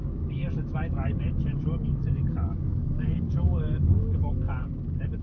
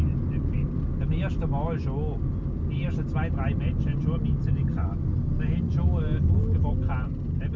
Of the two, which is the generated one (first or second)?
first